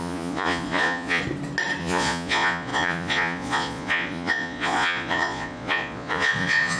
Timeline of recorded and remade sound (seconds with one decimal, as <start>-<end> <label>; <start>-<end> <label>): 0.0-1.2 remade; 1.2-1.8 recorded; 1.8-6.8 remade